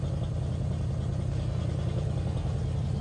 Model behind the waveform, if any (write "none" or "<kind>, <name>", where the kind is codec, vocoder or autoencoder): none